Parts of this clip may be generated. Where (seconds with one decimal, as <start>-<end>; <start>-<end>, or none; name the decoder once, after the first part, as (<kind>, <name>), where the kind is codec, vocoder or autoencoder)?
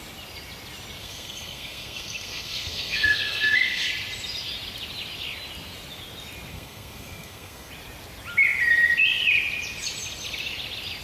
1.0-3.9 (codec, SNAC); 6.5-7.7